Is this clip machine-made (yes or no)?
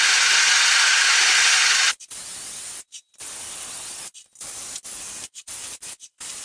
no